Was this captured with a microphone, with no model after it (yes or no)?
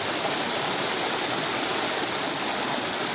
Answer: yes